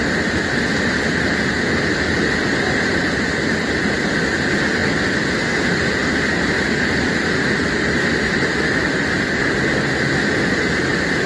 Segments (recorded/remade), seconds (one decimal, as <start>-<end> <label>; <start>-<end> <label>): 0.0-11.3 recorded